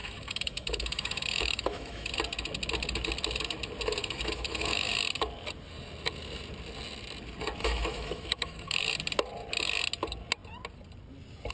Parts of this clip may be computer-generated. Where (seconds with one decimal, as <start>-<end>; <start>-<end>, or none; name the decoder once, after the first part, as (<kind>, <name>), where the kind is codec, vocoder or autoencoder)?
0.0-2.1 (autoencoder, DAC-VAE); 4.0-4.9; 7.6-8.8